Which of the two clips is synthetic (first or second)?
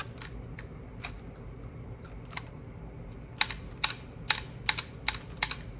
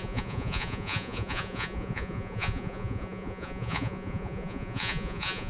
second